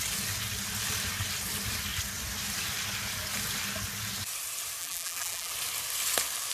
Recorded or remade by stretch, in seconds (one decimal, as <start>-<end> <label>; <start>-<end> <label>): 0.0-4.8 recorded; 4.8-5.5 remade; 5.5-6.5 recorded